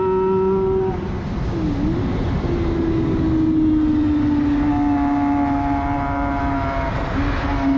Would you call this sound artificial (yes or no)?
no